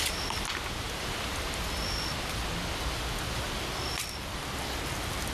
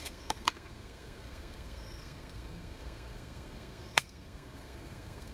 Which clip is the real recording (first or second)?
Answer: first